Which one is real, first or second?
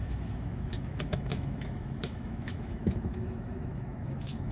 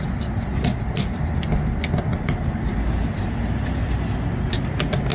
second